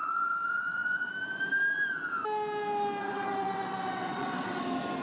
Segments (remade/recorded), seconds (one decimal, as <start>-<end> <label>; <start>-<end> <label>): 0.0-1.1 remade; 1.1-3.0 recorded; 3.0-4.6 remade; 4.6-5.0 recorded